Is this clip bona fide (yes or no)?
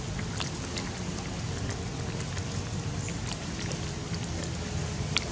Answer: yes